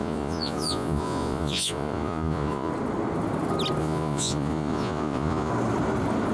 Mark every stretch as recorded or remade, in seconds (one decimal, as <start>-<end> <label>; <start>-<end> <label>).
0.0-2.7 remade; 2.7-3.8 recorded; 3.8-5.5 remade; 5.5-6.3 recorded